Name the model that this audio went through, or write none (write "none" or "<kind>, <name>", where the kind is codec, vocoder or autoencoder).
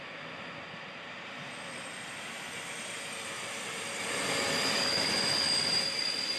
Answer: none